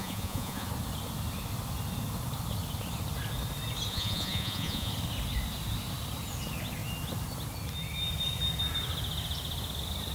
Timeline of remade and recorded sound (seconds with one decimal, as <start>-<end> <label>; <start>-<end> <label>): 0.0-0.7 remade; 0.7-3.9 recorded; 3.9-4.9 remade; 4.9-10.1 recorded

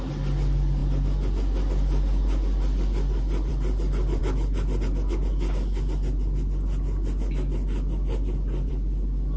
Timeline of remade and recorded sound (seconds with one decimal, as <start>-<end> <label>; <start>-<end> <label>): 0.0-9.4 recorded

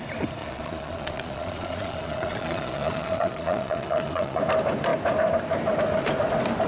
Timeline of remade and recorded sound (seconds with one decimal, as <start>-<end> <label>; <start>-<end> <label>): 0.0-0.4 recorded; 0.4-4.4 remade; 4.4-6.7 recorded

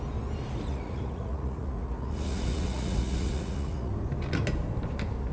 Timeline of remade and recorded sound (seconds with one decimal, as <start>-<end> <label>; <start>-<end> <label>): 0.0-0.7 recorded; 0.7-3.9 remade; 3.9-5.3 recorded

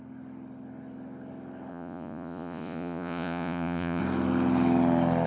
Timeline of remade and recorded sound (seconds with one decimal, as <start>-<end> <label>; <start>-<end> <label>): 0.0-1.7 recorded; 1.7-4.0 remade; 4.0-5.3 recorded

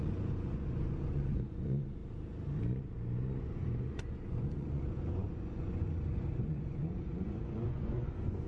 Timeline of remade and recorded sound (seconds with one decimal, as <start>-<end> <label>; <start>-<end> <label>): 0.0-2.0 remade; 2.0-3.4 recorded; 3.4-8.5 remade

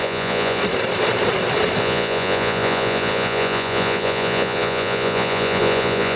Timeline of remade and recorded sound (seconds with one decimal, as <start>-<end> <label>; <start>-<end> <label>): 0.0-0.6 remade; 0.6-1.8 recorded; 1.8-6.2 remade

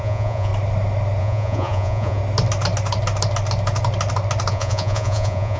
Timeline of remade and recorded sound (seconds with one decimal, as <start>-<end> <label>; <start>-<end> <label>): 0.0-0.5 remade; 0.5-1.2 recorded; 1.2-2.2 remade; 2.2-4.5 recorded; 4.5-5.6 remade